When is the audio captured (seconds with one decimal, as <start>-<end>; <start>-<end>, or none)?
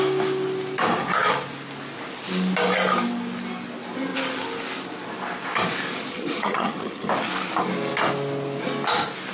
0.0-6.1; 7.1-9.3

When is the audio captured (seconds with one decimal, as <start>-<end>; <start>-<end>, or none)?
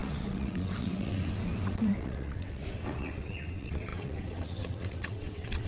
none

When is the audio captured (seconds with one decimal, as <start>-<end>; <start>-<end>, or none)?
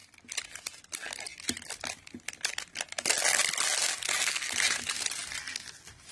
0.0-6.1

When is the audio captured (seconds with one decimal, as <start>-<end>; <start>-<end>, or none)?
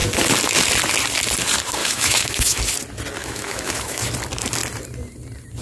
0.0-1.8; 2.6-3.2; 4.0-5.6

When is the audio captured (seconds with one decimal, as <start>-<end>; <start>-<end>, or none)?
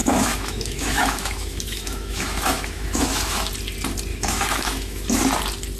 3.5-4.1; 5.2-5.8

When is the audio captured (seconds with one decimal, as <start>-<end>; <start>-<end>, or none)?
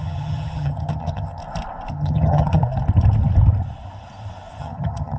1.4-1.9; 2.6-4.6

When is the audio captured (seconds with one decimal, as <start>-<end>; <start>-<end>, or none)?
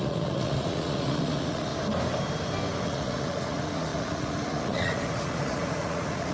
1.7-2.8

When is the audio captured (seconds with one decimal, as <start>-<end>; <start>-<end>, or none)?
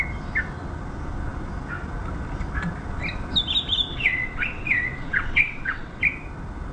0.0-3.9; 6.0-6.7